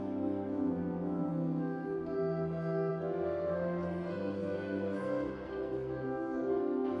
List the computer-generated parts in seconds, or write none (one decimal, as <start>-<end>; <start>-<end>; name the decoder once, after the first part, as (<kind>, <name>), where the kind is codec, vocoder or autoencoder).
0.0-7.0 (codec, SNAC)